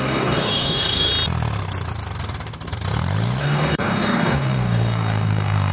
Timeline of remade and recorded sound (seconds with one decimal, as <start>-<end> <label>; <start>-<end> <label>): 0.0-1.1 remade; 1.1-3.4 recorded; 3.4-5.7 remade

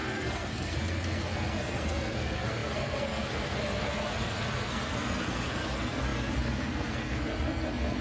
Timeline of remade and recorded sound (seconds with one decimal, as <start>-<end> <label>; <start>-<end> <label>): 0.0-8.0 remade

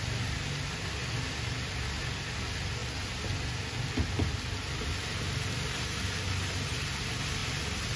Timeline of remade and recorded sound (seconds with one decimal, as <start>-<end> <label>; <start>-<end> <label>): 0.0-8.0 recorded

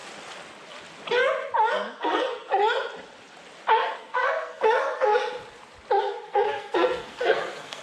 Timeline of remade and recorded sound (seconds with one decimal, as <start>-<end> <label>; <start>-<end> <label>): 0.0-1.7 recorded; 1.7-2.5 remade; 2.5-3.7 recorded; 3.7-5.2 remade; 5.2-6.0 recorded; 6.0-7.8 remade

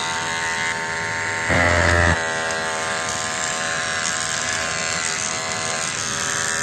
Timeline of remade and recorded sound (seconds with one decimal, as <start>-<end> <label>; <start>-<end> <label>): 0.0-6.6 recorded